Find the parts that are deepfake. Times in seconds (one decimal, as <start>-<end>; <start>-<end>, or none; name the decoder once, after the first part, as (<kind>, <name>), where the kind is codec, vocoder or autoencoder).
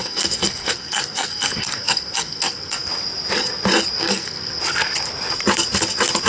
0.0-2.9 (codec, SNAC); 4.0-4.6